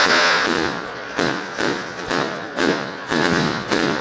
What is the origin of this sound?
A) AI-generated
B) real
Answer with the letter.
A